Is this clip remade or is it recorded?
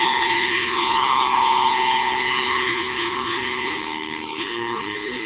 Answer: remade